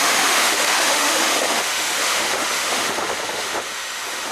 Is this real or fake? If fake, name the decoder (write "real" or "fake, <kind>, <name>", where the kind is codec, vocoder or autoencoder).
fake, autoencoder, DAC-VAE